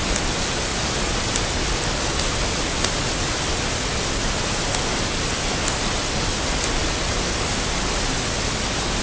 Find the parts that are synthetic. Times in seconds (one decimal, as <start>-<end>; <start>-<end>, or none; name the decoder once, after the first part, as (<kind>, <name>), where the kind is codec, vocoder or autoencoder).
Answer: 0.7-1.4 (vocoder, BigVGAN v2)